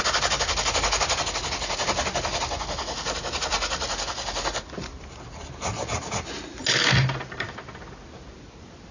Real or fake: real